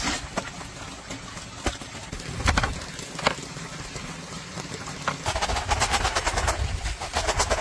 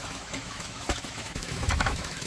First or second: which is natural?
first